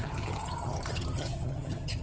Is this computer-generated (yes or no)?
yes